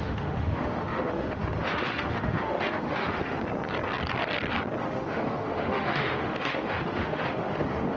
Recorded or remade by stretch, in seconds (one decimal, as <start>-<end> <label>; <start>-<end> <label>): 0.0-3.4 remade; 3.4-4.8 recorded; 4.8-8.0 remade